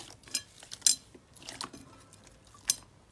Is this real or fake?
real